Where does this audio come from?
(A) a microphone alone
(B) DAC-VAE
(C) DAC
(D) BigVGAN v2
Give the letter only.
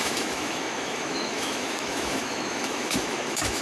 B